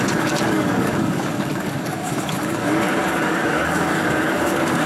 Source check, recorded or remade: remade